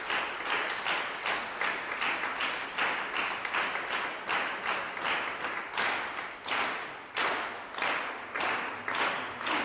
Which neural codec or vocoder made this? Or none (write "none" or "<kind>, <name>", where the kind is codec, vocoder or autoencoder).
none